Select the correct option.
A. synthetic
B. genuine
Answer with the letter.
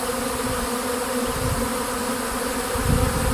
B